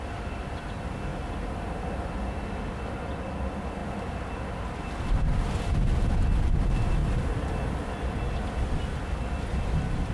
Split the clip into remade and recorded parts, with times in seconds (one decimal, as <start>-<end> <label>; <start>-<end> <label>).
0.0-10.1 recorded